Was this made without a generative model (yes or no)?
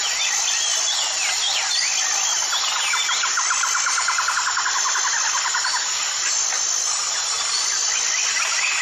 yes